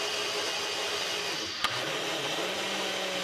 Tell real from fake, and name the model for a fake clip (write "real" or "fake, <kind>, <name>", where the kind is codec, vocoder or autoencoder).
real